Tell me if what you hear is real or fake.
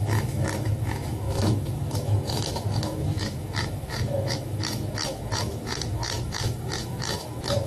fake